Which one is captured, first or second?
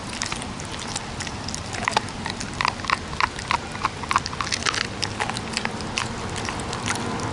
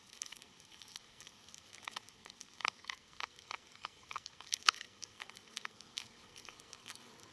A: first